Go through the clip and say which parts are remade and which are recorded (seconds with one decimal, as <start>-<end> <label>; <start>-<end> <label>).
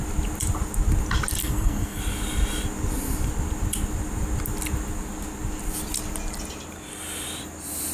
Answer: 0.0-1.4 recorded; 1.4-2.0 remade; 2.0-7.9 recorded